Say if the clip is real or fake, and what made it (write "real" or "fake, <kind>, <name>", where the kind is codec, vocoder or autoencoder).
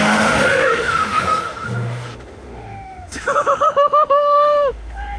fake, autoencoder, DAC-VAE